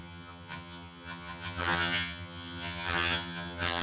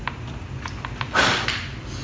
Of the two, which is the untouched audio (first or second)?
second